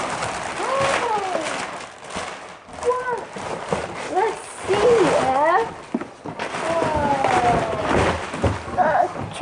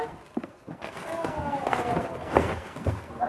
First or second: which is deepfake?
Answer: second